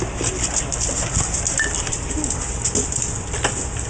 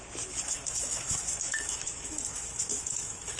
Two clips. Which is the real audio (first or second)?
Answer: first